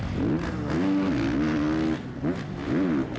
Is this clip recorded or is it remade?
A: recorded